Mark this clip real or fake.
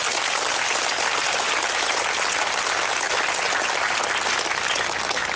real